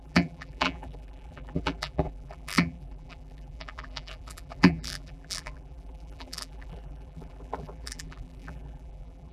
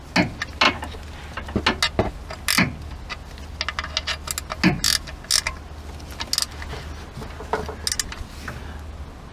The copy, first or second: first